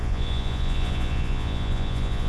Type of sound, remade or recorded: remade